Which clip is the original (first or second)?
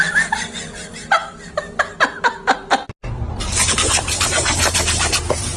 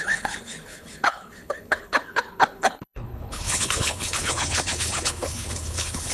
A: first